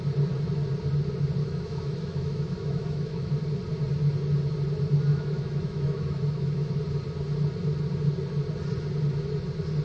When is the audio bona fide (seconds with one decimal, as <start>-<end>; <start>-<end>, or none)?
0.0-1.4; 3.3-5.1; 6.8-9.8